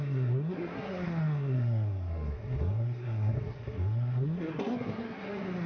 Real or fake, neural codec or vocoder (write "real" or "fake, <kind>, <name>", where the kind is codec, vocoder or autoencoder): fake, codec, SNAC